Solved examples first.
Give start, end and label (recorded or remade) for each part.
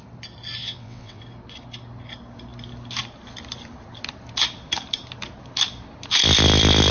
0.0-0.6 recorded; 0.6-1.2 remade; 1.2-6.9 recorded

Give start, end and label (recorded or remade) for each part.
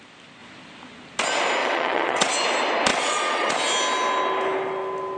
0.0-1.6 recorded; 1.6-2.3 remade; 2.3-2.9 recorded; 2.9-3.5 remade; 3.5-5.2 recorded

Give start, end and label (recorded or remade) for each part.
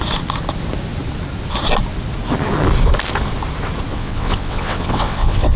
0.0-3.9 recorded; 3.9-5.6 remade